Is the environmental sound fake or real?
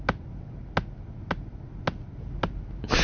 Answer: real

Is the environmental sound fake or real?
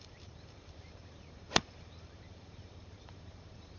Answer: fake